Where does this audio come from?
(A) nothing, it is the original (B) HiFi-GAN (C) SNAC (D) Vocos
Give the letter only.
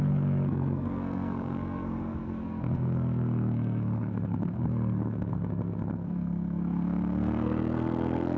C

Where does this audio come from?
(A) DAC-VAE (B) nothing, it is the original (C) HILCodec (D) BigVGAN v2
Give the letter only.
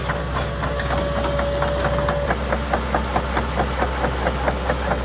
B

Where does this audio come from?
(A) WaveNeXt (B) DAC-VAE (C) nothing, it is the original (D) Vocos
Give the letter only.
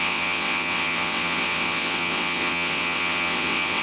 A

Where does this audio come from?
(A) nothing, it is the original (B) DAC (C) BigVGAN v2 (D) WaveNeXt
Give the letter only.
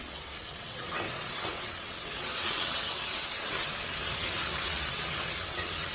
D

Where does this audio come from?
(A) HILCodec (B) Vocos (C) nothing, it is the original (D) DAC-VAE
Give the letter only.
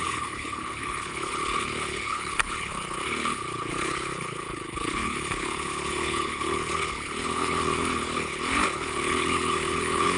A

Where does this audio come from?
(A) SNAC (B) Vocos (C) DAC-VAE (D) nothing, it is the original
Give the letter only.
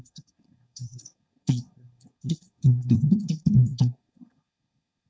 A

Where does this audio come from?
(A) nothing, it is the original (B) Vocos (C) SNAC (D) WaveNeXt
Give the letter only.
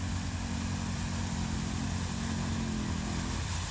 A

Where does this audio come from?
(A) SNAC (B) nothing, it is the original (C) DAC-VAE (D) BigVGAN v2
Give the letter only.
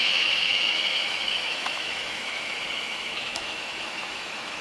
C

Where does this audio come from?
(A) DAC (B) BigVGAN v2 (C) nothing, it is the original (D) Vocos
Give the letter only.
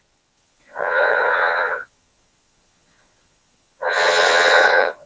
D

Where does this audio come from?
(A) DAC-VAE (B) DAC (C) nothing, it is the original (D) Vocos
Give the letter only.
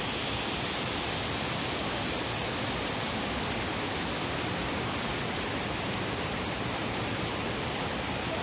C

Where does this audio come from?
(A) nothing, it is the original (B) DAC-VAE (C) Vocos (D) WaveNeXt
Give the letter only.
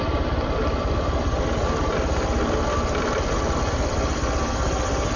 A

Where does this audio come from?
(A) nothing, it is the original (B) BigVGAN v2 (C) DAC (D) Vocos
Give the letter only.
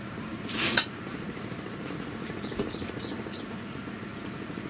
D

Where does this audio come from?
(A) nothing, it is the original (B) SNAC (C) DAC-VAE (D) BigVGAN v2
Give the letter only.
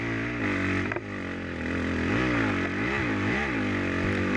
A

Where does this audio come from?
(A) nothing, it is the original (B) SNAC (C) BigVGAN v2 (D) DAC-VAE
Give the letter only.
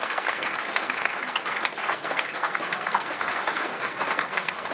B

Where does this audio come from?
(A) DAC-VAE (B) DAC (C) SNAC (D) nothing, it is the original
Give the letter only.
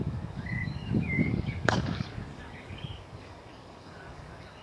B